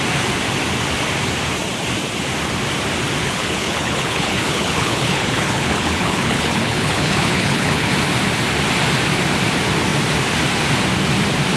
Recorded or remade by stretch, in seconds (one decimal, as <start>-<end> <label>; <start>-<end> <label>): 0.0-3.2 recorded; 3.2-7.9 remade; 7.9-11.6 recorded